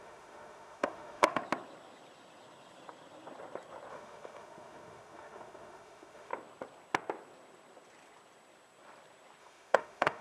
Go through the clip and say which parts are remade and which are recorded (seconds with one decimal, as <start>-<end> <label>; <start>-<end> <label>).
0.0-1.4 remade; 1.4-3.9 recorded; 3.9-6.3 remade; 6.3-9.4 recorded; 9.4-10.2 remade